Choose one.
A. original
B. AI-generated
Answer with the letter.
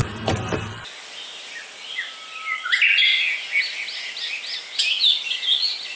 A